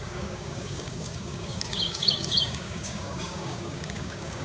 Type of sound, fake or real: fake